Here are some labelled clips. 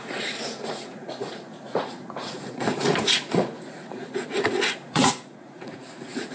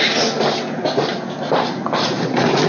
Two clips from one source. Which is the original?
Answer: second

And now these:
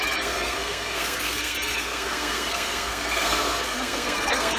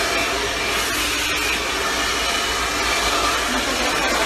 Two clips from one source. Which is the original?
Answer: second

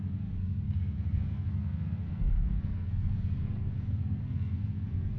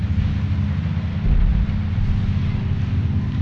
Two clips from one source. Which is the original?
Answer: second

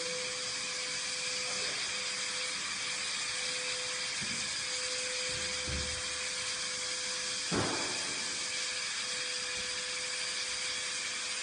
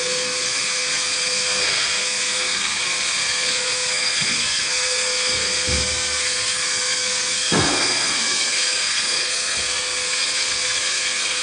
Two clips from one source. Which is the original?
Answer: first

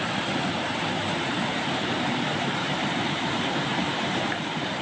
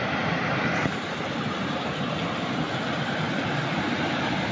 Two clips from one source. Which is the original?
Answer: second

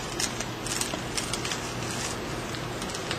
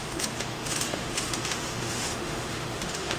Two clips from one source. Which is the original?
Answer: first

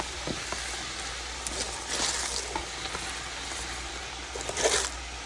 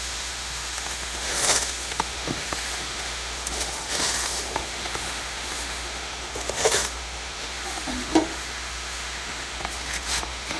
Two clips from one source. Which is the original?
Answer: first